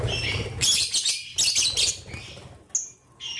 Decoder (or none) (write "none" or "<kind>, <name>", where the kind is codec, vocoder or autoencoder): none